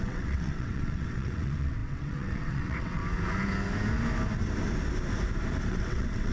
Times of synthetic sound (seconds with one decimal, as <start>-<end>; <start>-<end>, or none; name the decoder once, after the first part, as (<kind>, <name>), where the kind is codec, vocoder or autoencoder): 0.0-3.0 (vocoder, WaveNeXt); 5.7-6.3